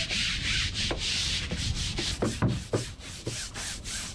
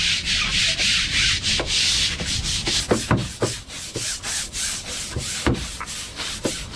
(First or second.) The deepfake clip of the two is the first